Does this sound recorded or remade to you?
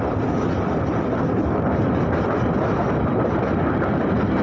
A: recorded